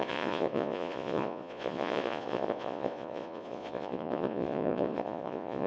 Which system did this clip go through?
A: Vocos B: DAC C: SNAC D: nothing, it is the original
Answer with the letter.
A